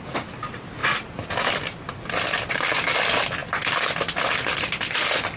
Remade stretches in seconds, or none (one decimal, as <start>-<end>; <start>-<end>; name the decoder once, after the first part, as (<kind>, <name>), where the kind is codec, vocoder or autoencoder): none